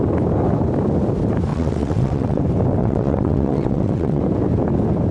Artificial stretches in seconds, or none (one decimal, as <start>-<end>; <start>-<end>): 1.5-2.4; 2.8-4.2